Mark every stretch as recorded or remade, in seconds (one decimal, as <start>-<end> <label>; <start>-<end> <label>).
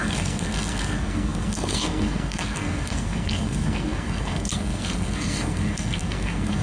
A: 0.0-6.6 remade